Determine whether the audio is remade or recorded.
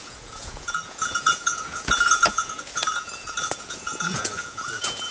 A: remade